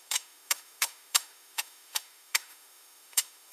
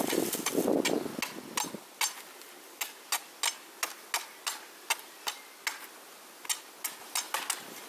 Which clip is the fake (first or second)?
first